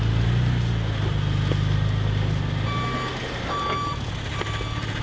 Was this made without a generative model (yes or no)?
yes